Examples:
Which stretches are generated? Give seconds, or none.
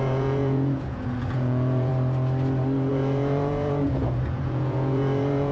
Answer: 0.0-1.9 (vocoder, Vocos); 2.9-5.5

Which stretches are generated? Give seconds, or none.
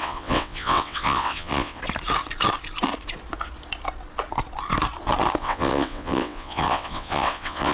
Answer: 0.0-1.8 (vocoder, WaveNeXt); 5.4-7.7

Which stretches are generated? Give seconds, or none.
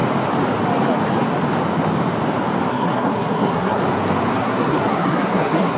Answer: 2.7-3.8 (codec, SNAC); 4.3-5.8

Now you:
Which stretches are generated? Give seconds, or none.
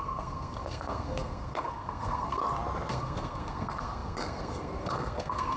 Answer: 0.0-2.4 (codec, SNAC); 2.9-5.6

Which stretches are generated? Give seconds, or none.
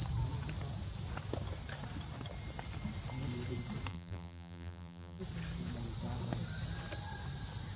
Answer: 3.9-5.2 (vocoder, BigVGAN v2)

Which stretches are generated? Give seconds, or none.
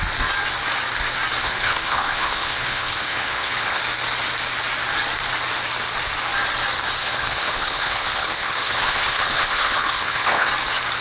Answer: 1.4-3.8 (codec, HILCodec); 7.0-10.5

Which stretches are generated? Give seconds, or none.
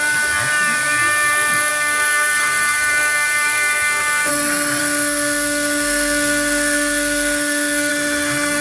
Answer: 1.7-4.3 (codec, SNAC); 4.8-7.9